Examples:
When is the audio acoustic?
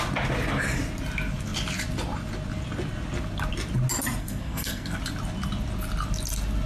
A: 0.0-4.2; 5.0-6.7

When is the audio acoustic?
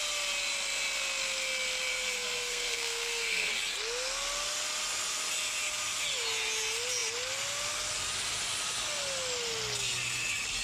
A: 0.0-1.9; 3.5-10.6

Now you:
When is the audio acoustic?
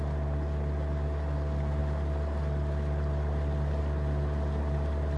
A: 0.0-5.2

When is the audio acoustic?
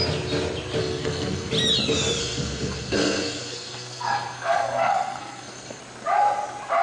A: 0.0-0.8; 1.5-2.2; 5.8-6.8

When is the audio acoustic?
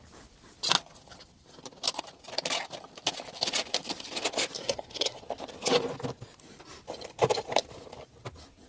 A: 0.0-4.6; 5.2-8.7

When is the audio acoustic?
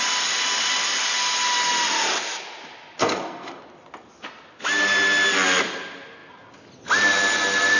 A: 0.0-3.0; 3.6-7.8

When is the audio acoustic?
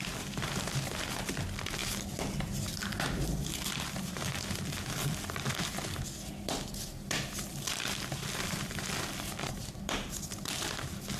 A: 0.0-11.2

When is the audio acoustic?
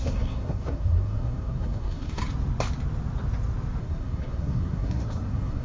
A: 2.2-3.8